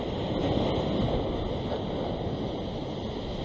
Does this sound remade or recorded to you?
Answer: recorded